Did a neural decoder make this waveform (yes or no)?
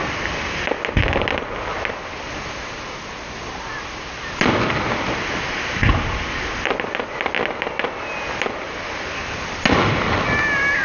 no